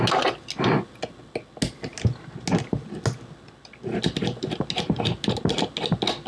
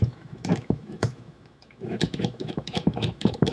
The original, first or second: first